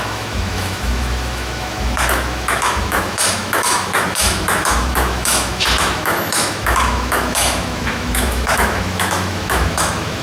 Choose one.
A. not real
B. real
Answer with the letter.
A